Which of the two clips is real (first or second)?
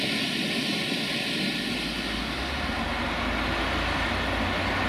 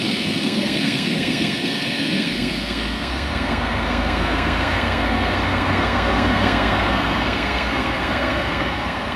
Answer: first